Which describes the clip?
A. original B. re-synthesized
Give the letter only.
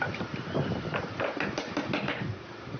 B